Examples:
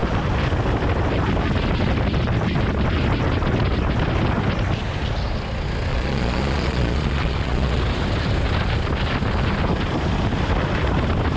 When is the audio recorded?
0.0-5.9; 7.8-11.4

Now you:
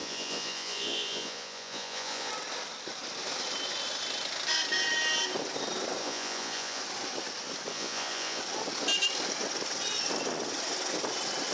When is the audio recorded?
2.3-6.0; 6.8-7.7; 8.4-11.5

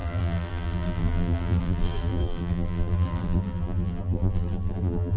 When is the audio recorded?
none

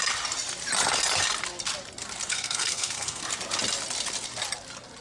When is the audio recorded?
0.0-2.3; 3.2-5.0

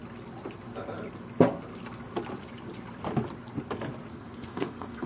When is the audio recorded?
0.0-4.1

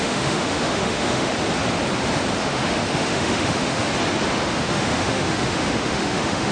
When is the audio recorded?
1.3-2.4; 3.9-4.5